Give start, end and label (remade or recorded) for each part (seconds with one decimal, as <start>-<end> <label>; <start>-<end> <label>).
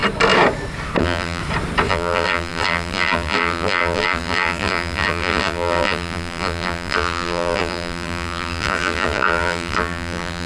0.0-1.0 recorded; 1.0-1.4 remade; 1.4-1.9 recorded; 1.9-10.5 remade